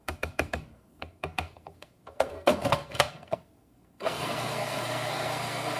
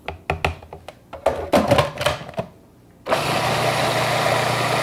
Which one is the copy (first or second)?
first